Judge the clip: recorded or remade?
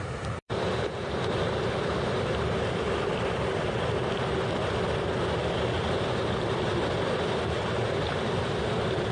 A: remade